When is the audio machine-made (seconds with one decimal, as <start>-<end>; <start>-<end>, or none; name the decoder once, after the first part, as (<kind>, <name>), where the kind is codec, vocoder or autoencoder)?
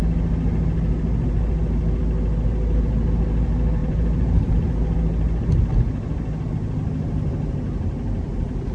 3.8-4.5 (vocoder, BigVGAN v2)